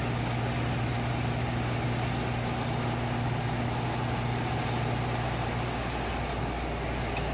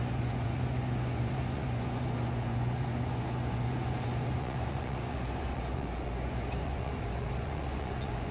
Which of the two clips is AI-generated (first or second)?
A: second